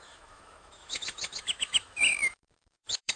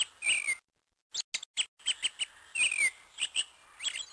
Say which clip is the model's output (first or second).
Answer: first